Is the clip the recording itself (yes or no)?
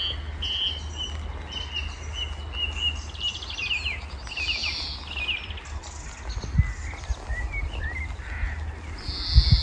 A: yes